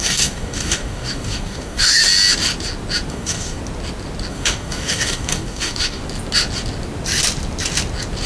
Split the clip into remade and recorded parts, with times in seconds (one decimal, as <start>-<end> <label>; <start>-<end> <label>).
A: 0.0-2.0 remade; 2.0-3.1 recorded; 3.1-3.6 remade; 3.6-4.3 recorded; 4.3-6.0 remade; 6.0-8.3 recorded

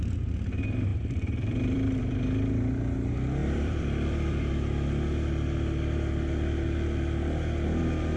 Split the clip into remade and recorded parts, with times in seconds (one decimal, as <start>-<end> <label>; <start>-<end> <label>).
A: 0.0-0.9 recorded; 0.9-2.0 remade; 2.0-3.4 recorded; 3.4-4.5 remade; 4.5-8.2 recorded

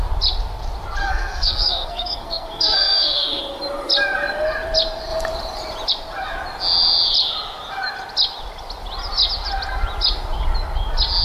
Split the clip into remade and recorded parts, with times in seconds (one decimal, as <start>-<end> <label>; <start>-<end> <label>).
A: 0.0-1.0 recorded; 1.0-3.4 remade; 3.4-11.2 recorded

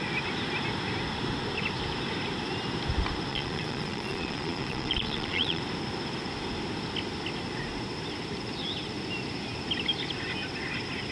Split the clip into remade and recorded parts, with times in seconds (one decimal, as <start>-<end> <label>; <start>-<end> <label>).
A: 0.0-3.3 recorded; 3.3-5.6 remade; 5.6-11.1 recorded